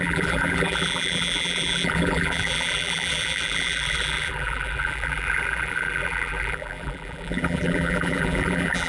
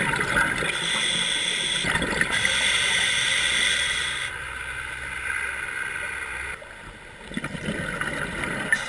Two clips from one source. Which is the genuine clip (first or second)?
second